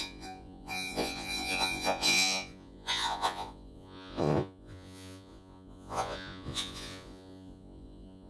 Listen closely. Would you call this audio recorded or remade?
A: remade